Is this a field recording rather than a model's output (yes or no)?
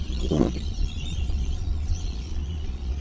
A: no